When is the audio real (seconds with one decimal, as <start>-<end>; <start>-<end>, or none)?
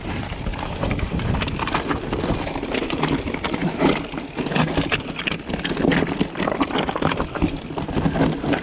0.0-0.5; 1.6-8.6